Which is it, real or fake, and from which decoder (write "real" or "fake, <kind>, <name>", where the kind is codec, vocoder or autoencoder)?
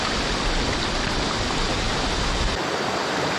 real